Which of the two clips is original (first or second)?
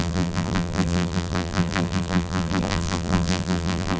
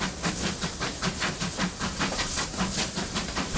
second